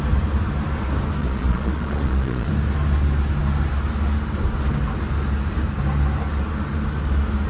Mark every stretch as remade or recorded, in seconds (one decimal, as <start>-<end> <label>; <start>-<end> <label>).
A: 0.0-1.2 recorded; 1.2-2.5 remade; 2.5-7.5 recorded